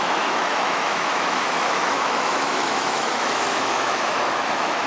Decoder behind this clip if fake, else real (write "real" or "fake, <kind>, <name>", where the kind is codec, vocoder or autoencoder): fake, autoencoder, DAC-VAE